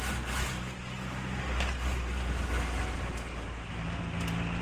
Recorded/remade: recorded